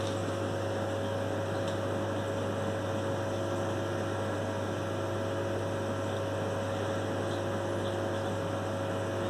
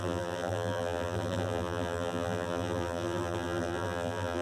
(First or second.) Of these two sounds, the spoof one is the second